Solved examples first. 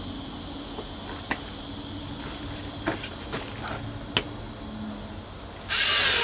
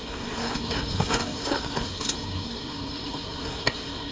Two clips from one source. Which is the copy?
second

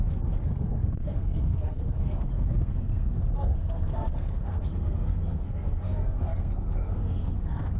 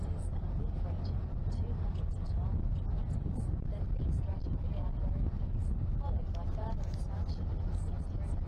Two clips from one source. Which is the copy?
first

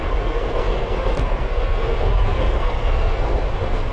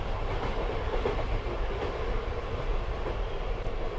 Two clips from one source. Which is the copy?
first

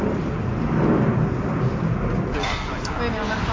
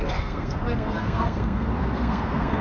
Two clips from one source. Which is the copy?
second